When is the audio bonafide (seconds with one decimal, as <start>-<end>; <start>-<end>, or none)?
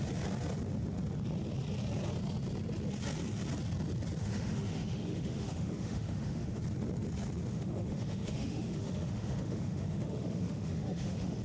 0.0-4.2; 6.6-7.5